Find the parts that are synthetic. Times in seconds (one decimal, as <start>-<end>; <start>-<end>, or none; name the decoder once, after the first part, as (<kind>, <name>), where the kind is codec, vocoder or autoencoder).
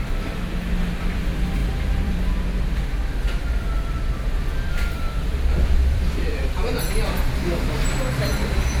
1.6-6.8 (vocoder, BigVGAN v2)